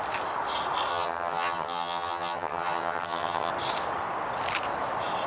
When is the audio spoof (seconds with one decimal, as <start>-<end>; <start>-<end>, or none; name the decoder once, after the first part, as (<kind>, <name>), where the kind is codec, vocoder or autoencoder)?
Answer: 0.9-3.5 (vocoder, HiFi-GAN)

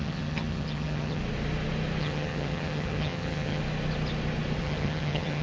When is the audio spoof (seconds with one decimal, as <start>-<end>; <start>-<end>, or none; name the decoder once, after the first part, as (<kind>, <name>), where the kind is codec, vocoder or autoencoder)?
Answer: 0.0-1.2 (vocoder, HiFi-GAN); 2.0-3.6; 4.6-5.4